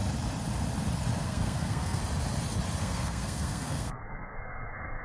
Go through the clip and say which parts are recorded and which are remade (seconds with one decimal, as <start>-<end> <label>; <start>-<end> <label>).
0.0-1.2 recorded; 1.2-2.0 remade; 2.0-2.8 recorded; 2.8-5.0 remade